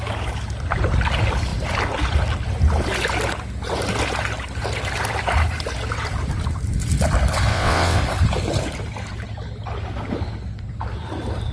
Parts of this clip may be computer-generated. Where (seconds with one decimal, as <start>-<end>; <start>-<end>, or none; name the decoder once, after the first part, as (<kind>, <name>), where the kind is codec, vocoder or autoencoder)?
7.5-8.0 (vocoder, WaveNeXt)